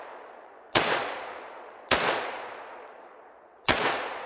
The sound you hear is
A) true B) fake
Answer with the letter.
B